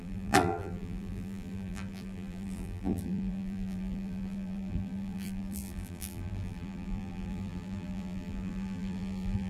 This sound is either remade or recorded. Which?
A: remade